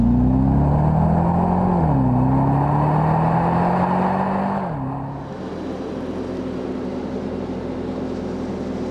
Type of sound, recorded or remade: recorded